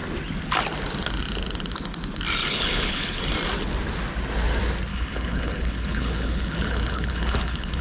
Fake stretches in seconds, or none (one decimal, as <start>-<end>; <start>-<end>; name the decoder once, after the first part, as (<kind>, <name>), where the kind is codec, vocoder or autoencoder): 2.4-3.2 (codec, HILCodec); 4.9-7.8